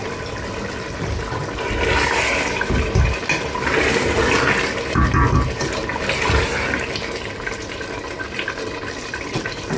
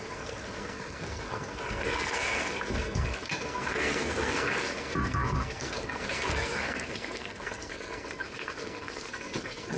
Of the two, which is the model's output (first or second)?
second